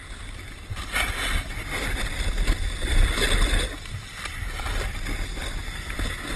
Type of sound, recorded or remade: recorded